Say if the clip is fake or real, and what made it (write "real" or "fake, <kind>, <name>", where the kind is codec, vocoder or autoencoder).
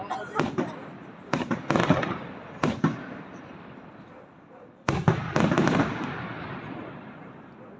real